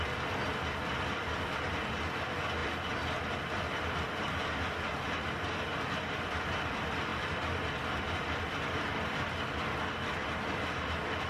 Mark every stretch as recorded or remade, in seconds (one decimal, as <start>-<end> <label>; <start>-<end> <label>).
0.0-0.4 recorded; 0.4-1.7 remade; 1.7-11.3 recorded